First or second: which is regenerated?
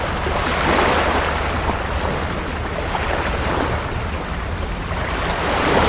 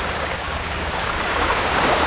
second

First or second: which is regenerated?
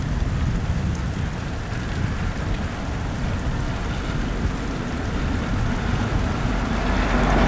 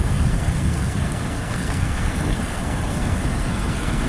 second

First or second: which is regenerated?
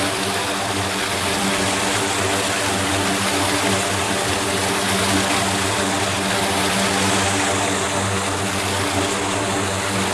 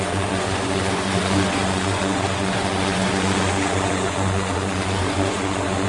second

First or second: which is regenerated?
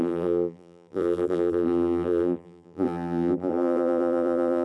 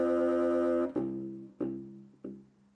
first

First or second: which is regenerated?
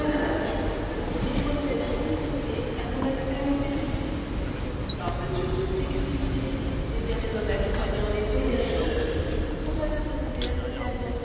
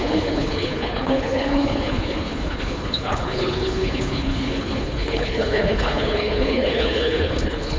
second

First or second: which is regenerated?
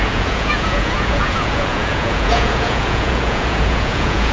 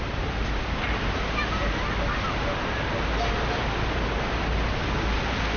first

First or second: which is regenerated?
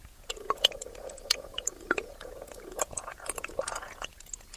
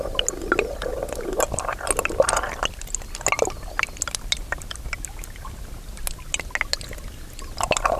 first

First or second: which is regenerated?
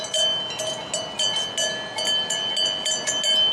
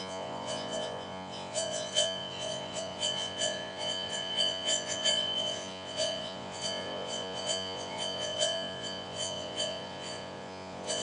second